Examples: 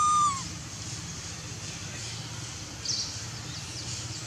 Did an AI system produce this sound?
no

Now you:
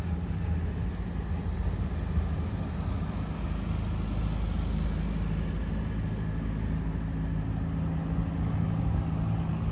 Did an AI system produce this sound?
no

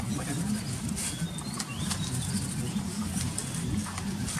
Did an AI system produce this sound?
no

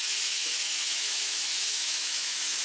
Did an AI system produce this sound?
yes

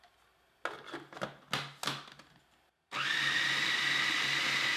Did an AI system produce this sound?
no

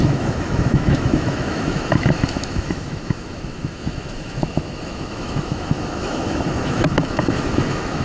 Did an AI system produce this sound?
yes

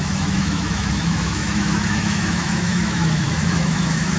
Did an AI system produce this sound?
yes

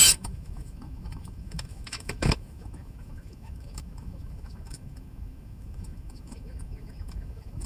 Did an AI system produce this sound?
yes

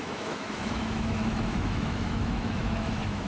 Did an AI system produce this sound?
yes